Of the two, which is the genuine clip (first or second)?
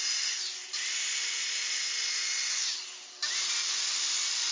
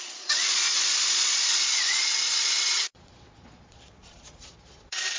first